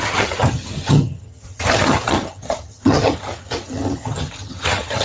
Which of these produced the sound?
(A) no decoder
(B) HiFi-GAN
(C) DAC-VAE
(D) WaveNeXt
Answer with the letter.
B